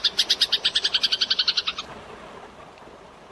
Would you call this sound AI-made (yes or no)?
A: no